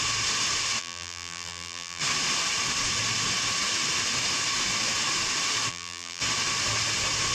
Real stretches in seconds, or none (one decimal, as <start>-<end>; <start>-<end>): 0.0-0.8; 2.0-5.7; 6.2-7.3